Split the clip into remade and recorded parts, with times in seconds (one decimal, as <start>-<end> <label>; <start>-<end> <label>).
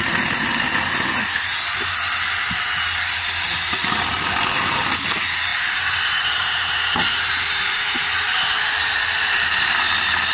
0.0-5.5 recorded; 5.5-8.2 remade; 8.2-10.3 recorded